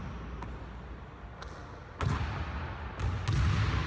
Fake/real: real